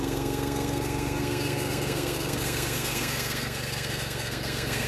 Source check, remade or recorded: remade